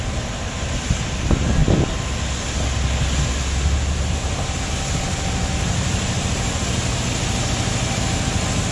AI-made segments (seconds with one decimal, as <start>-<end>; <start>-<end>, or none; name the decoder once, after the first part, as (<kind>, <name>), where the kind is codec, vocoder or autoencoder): none

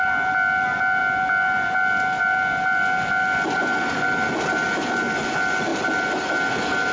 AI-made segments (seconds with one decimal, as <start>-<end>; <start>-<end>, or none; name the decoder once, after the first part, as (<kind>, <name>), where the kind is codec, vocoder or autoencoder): none

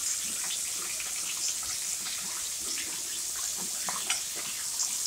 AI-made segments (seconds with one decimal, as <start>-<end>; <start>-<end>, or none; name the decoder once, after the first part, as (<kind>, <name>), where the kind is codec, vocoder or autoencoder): none